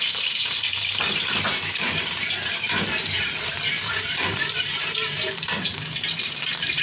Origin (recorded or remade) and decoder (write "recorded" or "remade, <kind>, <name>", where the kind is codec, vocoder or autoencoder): remade, vocoder, BigVGAN v2